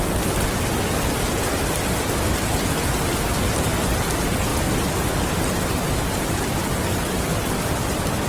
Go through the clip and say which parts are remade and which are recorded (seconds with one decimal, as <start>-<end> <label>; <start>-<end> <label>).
0.0-8.3 recorded